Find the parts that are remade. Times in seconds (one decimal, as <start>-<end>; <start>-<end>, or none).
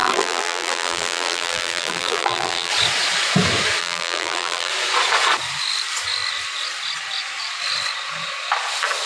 0.0-2.7; 3.8-4.7